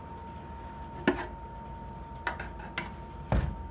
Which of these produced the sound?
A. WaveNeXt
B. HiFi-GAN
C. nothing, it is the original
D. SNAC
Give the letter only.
C